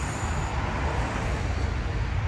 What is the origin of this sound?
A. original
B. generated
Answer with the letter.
A